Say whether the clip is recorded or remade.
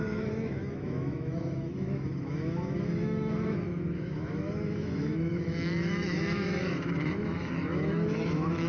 remade